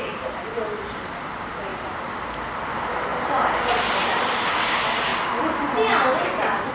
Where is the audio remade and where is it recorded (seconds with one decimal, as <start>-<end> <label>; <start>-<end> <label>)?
0.0-6.7 recorded